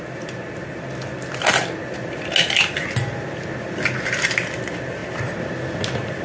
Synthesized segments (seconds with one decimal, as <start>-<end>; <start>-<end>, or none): none